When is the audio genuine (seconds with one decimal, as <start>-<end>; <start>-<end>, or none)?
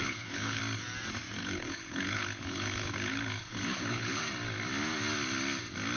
0.6-1.4; 4.2-6.0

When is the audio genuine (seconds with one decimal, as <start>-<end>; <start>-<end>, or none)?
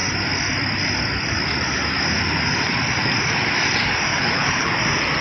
0.0-4.1; 4.7-5.2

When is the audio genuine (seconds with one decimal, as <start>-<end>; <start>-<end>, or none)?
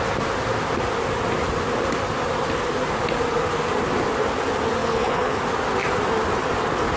0.0-4.8; 5.4-7.0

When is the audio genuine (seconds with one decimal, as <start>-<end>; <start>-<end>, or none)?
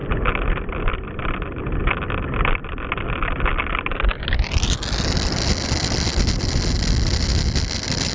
0.0-8.1